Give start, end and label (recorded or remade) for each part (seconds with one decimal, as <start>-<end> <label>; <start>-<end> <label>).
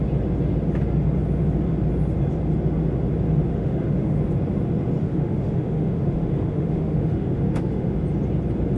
0.0-3.5 recorded; 3.5-4.2 remade; 4.2-5.0 recorded; 5.0-7.9 remade; 7.9-8.8 recorded